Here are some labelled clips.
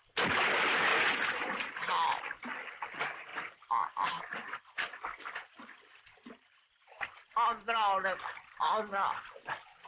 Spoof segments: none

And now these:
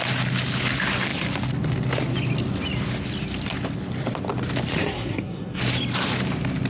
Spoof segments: 4.8-5.6 (codec, SNAC)

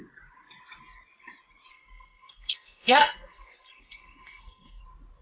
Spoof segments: 1.7-4.8 (codec, SNAC)

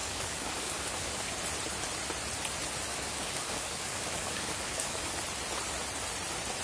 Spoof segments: 0.0-1.3 (codec, DAC); 2.9-5.0

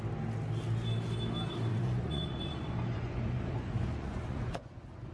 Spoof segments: 1.7-5.1 (vocoder, Vocos)

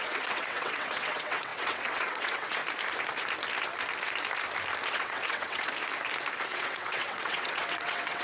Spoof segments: 0.0-2.6 (vocoder, WaveNeXt); 4.9-5.7; 6.5-8.2

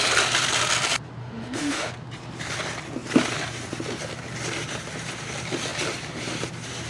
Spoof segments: 1.2-1.9 (autoencoder, DAC-VAE)

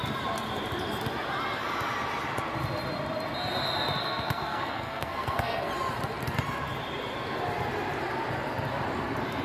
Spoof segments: 4.0-5.7 (codec, SNAC)